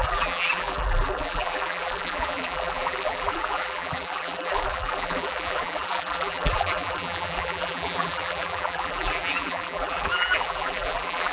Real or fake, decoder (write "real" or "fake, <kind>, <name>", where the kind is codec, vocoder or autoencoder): fake, vocoder, BigVGAN v2